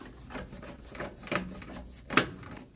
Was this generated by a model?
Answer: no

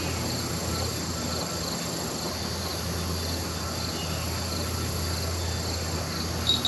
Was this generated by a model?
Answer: no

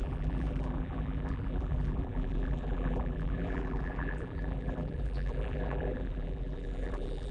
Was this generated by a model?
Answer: yes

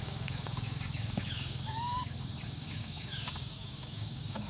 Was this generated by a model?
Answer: yes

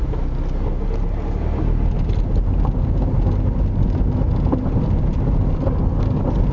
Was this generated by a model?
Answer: no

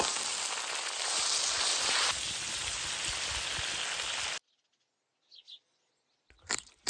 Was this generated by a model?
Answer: no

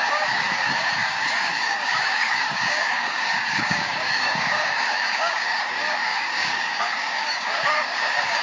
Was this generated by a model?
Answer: yes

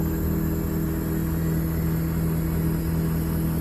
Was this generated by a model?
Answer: no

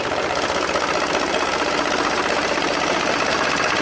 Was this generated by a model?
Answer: no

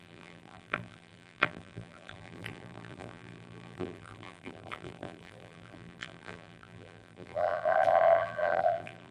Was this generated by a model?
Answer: yes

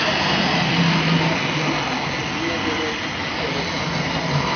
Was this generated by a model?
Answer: no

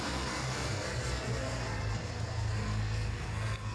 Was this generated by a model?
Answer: yes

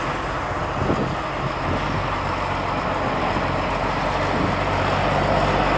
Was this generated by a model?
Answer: no